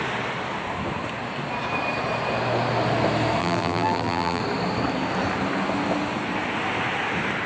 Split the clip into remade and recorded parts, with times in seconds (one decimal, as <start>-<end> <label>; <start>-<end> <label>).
0.0-3.4 recorded; 3.4-4.4 remade; 4.4-7.5 recorded